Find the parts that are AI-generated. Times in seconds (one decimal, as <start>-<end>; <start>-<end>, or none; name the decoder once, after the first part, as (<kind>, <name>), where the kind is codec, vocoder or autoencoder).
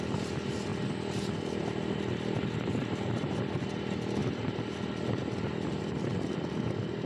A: none